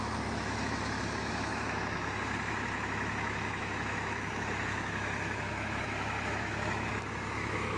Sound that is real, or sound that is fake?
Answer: fake